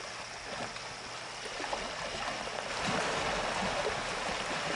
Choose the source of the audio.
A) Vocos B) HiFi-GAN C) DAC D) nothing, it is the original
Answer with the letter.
D